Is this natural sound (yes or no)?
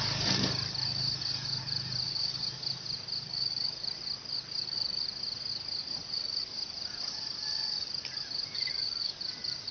yes